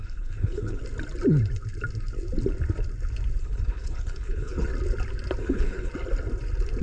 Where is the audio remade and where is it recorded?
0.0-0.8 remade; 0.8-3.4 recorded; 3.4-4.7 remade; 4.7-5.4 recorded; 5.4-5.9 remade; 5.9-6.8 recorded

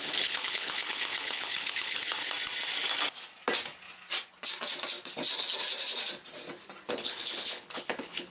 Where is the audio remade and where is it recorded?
0.0-2.2 remade; 2.2-6.9 recorded; 6.9-8.3 remade

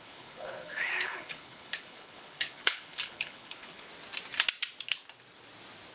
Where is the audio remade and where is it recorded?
0.0-3.9 remade; 3.9-5.9 recorded

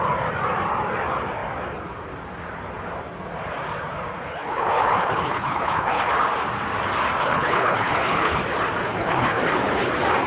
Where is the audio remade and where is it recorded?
0.0-4.3 recorded; 4.3-6.1 remade; 6.1-7.2 recorded; 7.2-8.4 remade; 8.4-8.8 recorded; 8.8-9.4 remade; 9.4-10.3 recorded